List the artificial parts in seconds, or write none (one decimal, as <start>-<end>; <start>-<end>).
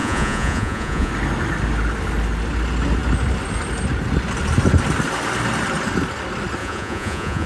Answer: 0.0-1.1; 6.6-7.5